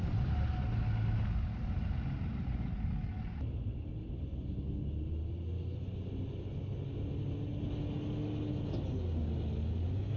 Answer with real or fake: real